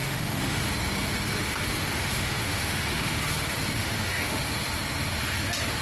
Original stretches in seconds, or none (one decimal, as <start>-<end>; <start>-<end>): 0.6-1.7; 3.2-3.8; 4.4-5.8